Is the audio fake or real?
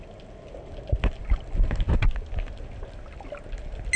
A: real